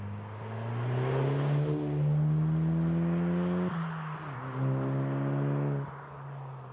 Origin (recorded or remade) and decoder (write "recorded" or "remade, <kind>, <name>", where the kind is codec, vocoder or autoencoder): recorded